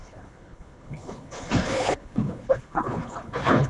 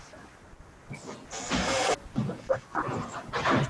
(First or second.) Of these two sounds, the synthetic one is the first